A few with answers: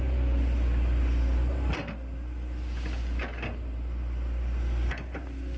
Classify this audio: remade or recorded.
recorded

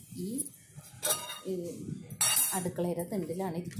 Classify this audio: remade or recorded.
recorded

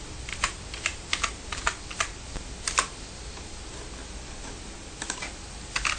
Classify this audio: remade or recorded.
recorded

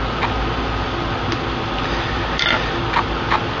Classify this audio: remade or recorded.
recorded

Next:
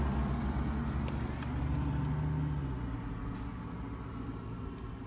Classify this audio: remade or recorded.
recorded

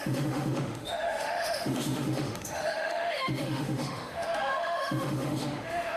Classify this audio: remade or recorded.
remade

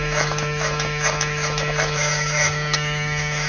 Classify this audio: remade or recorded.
remade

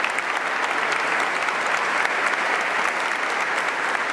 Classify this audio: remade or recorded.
recorded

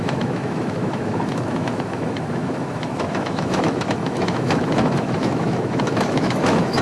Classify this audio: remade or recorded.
remade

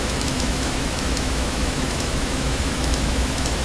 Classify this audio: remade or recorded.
remade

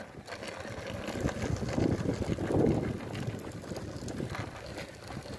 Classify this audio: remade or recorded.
recorded